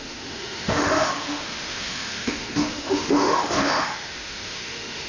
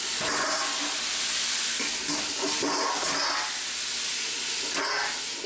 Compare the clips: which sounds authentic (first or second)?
second